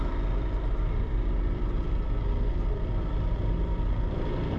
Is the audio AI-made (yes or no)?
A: yes